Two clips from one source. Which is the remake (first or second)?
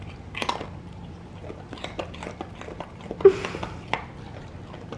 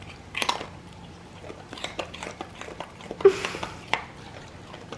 second